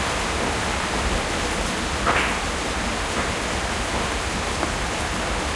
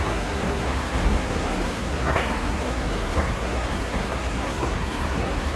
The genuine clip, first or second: first